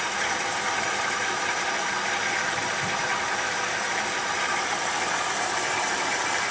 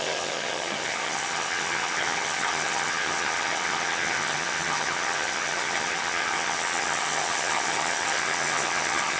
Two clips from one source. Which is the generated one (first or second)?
second